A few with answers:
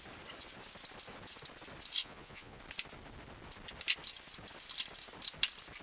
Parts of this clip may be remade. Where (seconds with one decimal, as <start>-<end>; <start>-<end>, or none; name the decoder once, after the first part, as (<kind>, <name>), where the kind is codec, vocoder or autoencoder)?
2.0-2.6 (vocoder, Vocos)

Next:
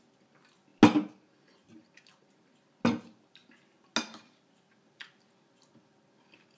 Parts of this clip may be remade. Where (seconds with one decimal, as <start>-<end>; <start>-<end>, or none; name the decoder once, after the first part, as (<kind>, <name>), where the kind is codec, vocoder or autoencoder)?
none

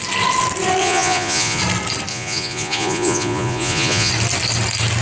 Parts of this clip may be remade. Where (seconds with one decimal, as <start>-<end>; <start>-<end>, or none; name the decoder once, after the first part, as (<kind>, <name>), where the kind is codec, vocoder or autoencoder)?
0.8-1.6 (vocoder, Vocos); 2.1-4.1

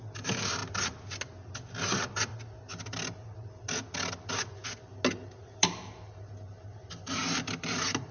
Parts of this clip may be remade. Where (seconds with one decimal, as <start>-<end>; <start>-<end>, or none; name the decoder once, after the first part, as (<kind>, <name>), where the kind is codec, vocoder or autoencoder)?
0.0-0.6 (vocoder, BigVGAN v2); 5.4-8.1